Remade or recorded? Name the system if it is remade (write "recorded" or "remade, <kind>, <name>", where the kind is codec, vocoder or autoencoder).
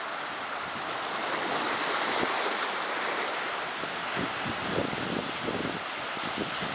recorded